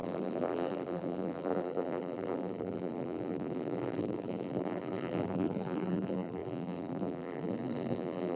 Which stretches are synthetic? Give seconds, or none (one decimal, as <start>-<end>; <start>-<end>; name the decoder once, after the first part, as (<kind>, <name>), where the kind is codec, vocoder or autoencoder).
0.0-8.4 (vocoder, BigVGAN v2)